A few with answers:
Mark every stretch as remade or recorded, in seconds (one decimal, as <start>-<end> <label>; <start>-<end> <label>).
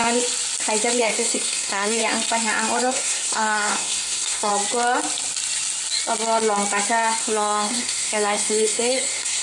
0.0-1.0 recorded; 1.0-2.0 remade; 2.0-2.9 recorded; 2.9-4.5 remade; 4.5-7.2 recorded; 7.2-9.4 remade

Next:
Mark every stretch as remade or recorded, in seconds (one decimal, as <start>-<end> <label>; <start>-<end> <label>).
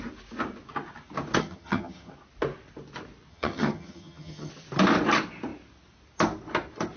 0.0-1.4 recorded; 1.4-2.1 remade; 2.1-3.3 recorded; 3.3-4.5 remade; 4.5-7.0 recorded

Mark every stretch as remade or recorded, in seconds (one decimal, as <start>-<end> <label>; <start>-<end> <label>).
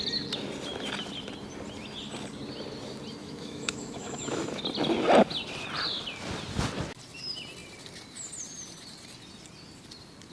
0.0-3.2 recorded; 3.2-4.6 remade; 4.6-10.3 recorded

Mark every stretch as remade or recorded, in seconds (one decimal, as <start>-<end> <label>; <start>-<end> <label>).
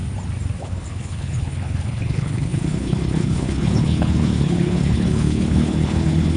0.0-0.6 recorded; 0.6-6.4 remade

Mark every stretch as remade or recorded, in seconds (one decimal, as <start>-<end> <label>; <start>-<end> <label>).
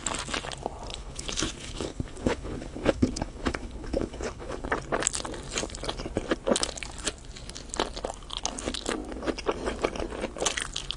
0.0-0.9 recorded; 0.9-4.7 remade; 4.7-11.0 recorded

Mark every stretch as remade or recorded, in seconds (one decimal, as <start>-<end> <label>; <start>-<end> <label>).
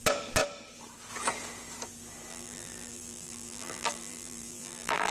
0.0-2.3 recorded; 2.3-5.1 remade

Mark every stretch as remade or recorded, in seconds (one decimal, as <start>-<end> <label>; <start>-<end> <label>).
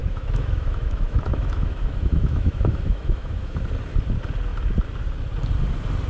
0.0-3.7 remade; 3.7-6.1 recorded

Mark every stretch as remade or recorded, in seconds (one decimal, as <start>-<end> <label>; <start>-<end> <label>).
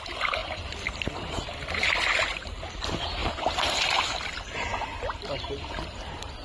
0.0-6.4 recorded